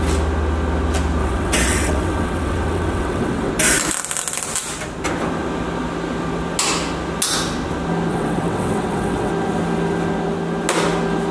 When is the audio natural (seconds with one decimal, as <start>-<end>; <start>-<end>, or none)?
0.0-1.2; 3.5-8.1; 9.3-11.3

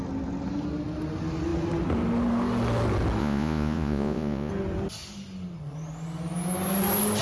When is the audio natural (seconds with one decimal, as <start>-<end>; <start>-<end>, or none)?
0.0-3.2; 4.5-7.2

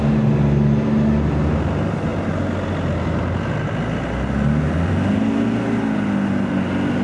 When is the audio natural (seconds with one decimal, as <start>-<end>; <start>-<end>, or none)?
0.0-7.0

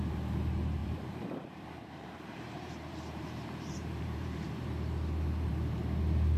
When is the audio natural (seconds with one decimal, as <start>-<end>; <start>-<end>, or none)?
0.0-0.8; 4.6-6.4

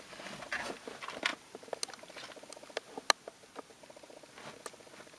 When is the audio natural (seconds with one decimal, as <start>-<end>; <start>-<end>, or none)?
0.0-5.2

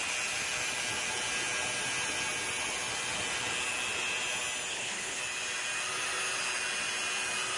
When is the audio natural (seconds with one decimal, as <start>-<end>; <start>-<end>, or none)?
0.0-4.7; 5.2-7.6